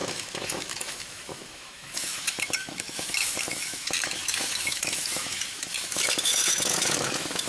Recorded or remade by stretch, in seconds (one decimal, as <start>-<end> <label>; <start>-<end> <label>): 0.0-7.5 remade